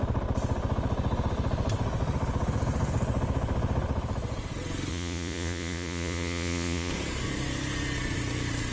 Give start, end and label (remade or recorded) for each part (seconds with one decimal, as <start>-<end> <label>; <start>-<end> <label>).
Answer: 0.0-4.9 recorded; 4.9-6.9 remade; 6.9-8.7 recorded